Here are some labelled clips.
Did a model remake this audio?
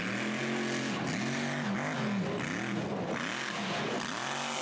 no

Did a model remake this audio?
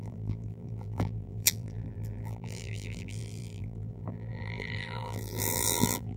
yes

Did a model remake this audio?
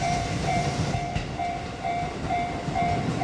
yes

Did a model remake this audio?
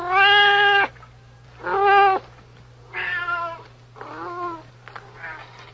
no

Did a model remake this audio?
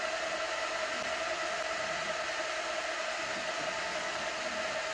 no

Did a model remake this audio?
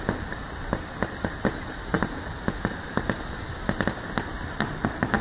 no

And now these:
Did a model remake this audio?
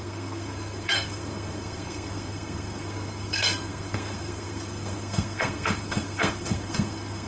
yes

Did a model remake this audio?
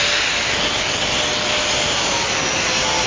no